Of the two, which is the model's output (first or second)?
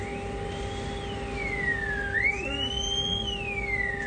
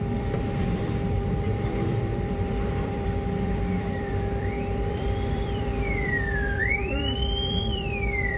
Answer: second